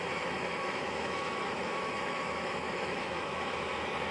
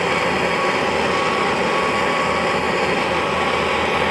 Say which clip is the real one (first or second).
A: second